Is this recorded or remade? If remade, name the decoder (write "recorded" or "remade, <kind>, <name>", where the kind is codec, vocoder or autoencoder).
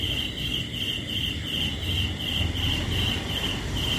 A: recorded